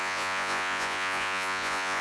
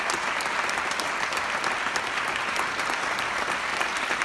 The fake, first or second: first